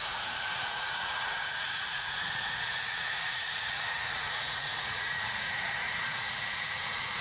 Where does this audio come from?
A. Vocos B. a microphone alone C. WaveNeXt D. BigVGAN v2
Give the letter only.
A